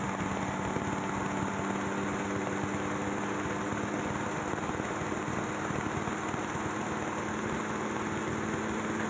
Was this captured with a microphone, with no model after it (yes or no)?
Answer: yes